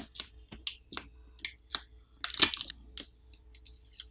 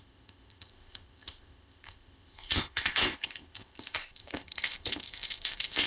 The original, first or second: first